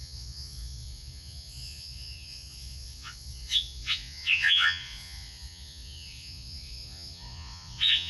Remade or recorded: remade